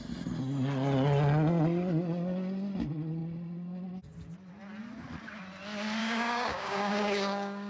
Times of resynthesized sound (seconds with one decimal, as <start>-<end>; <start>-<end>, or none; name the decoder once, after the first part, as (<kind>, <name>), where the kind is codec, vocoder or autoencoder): 6.0-7.7 (codec, DAC)